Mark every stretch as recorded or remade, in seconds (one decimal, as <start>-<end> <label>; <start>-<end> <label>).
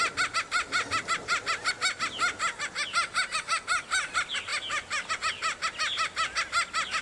0.0-7.0 recorded